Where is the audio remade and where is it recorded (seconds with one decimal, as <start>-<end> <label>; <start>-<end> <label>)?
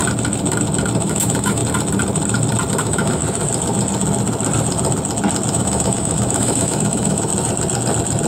0.0-1.0 recorded; 1.0-1.6 remade; 1.6-2.7 recorded; 2.7-3.2 remade; 3.2-5.5 recorded; 5.5-7.3 remade; 7.3-8.3 recorded